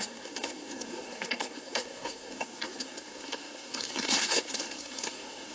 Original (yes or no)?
no